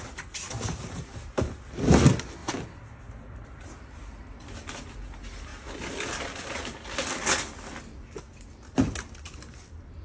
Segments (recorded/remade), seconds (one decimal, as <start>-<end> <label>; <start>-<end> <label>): 0.0-10.0 recorded